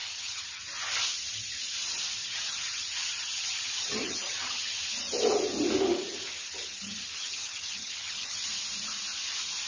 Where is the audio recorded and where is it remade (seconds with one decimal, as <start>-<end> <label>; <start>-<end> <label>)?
0.0-0.6 remade; 0.6-2.2 recorded; 2.2-4.8 remade; 4.8-7.2 recorded; 7.2-8.5 remade; 8.5-9.7 recorded